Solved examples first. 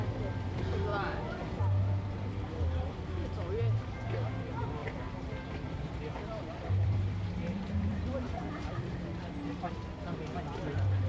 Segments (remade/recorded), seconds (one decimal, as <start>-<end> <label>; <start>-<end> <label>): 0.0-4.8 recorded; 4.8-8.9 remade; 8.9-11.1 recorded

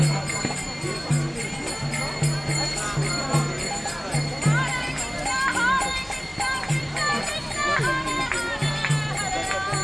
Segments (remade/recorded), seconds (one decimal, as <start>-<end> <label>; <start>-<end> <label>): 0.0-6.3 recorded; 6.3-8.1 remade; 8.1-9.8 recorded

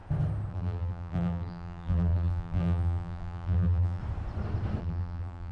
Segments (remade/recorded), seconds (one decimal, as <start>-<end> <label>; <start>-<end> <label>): 0.0-0.5 recorded; 0.5-4.0 remade; 4.0-4.8 recorded; 4.8-5.5 remade

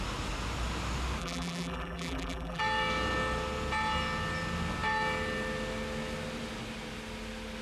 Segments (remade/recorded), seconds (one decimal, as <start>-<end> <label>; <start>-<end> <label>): 0.0-1.2 recorded; 1.2-2.6 remade; 2.6-7.6 recorded

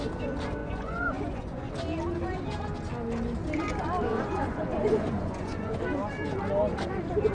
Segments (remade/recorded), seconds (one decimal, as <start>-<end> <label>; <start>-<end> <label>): 0.0-0.6 recorded; 0.6-1.7 remade; 1.7-4.1 recorded; 4.1-5.8 remade; 5.8-7.3 recorded

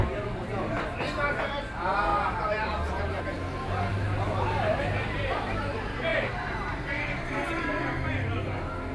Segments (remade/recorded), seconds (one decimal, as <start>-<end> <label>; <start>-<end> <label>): 0.0-2.1 recorded; 2.1-3.2 remade; 3.2-3.9 recorded; 3.9-5.6 remade; 5.6-6.1 recorded; 6.1-7.5 remade; 7.5-8.9 recorded

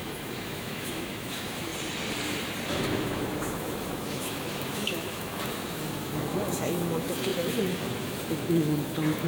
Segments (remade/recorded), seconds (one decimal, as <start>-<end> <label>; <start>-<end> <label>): 0.0-1.7 remade; 1.7-2.7 recorded; 2.7-9.3 remade